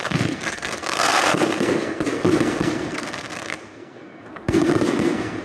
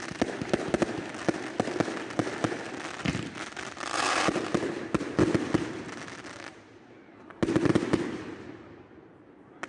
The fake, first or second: first